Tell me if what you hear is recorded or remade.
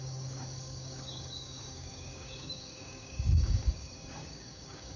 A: remade